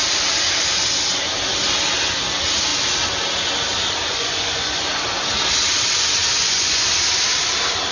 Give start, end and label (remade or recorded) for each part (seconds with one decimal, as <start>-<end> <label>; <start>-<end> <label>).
0.0-4.1 recorded; 4.1-4.9 remade; 4.9-6.4 recorded; 6.4-6.9 remade; 6.9-7.9 recorded

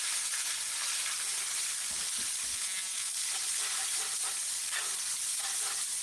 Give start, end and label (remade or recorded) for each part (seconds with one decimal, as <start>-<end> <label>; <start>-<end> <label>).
0.0-2.5 recorded; 2.5-3.1 remade; 3.1-6.0 recorded

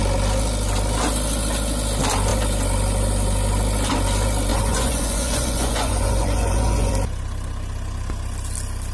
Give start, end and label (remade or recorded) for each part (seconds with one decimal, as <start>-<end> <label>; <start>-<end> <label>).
0.0-4.5 recorded; 4.5-6.9 remade; 6.9-8.9 recorded

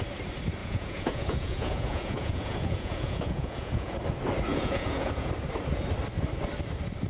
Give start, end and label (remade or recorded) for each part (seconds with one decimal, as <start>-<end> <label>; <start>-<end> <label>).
0.0-0.6 recorded; 0.6-3.9 remade; 3.9-4.5 recorded; 4.5-5.3 remade; 5.3-7.1 recorded

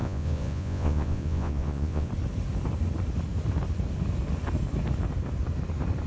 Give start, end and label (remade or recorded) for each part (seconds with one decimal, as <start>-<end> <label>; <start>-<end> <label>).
0.0-2.1 remade; 2.1-6.1 recorded

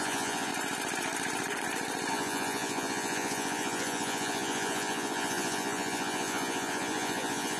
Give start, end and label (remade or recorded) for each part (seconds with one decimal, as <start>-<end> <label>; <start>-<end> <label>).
0.0-0.5 remade; 0.5-2.1 recorded; 2.1-7.6 remade

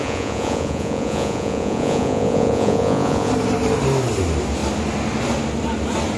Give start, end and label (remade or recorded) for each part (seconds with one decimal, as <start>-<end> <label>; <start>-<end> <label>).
0.0-3.3 remade; 3.3-6.2 recorded